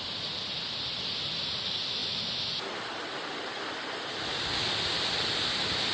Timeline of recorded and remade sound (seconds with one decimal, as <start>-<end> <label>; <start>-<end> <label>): 0.0-5.9 recorded